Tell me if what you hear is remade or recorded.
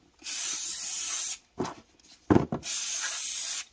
recorded